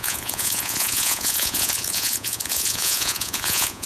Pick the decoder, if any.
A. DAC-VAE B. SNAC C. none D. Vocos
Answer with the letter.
D